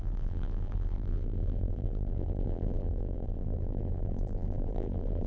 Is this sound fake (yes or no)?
yes